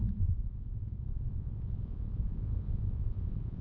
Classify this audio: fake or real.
fake